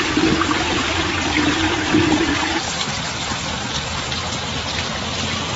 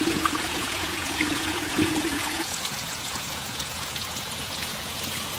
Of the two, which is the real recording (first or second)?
first